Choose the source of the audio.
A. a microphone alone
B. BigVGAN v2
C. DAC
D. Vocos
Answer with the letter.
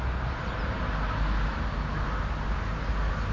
A